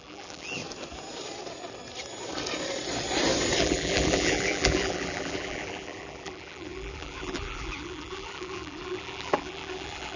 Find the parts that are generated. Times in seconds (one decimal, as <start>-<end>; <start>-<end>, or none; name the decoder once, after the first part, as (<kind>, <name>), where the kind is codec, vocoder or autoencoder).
0.0-0.6 (vocoder, BigVGAN v2); 3.6-10.2